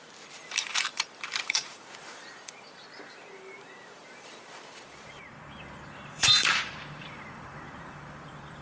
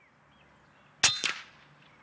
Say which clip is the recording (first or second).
second